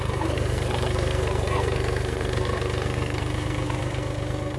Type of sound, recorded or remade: remade